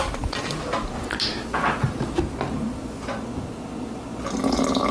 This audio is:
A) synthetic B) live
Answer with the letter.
B